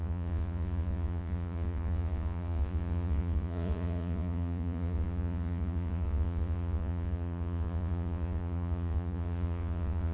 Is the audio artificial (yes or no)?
yes